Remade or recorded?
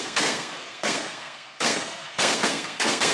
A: remade